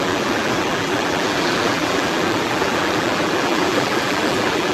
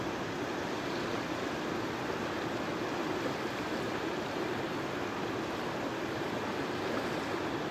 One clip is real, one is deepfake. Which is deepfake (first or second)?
first